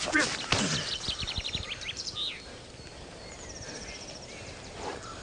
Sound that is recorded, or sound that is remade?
remade